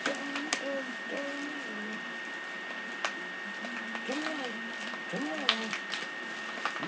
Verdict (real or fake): real